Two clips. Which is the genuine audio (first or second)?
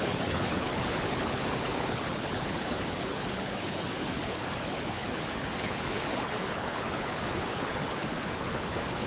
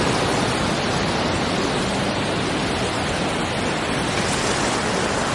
second